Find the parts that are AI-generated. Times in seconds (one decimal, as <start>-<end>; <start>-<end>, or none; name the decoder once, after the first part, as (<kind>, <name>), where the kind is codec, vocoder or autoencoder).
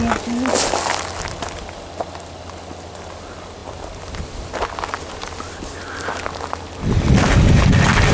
none